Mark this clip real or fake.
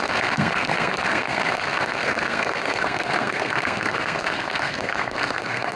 fake